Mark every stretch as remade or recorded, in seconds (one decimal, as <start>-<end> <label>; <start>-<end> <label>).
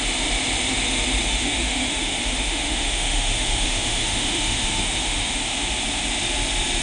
0.0-1.3 recorded; 1.3-5.4 remade; 5.4-6.8 recorded